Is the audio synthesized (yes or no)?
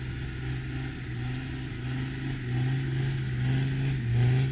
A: no